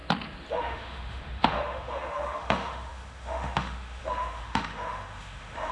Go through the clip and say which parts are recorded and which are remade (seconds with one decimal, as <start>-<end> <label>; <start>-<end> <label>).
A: 0.0-0.5 recorded; 0.5-5.7 remade